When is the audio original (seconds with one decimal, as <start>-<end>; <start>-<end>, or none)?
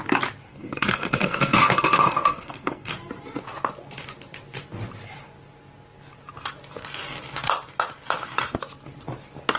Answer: 0.0-0.5; 2.9-9.6